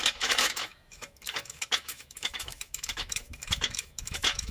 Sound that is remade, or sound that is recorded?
remade